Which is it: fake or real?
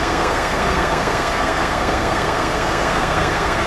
fake